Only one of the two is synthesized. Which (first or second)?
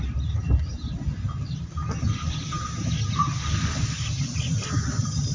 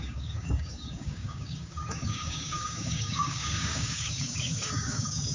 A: second